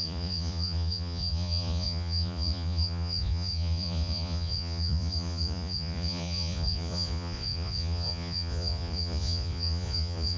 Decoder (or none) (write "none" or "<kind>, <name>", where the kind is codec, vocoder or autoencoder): vocoder, Vocos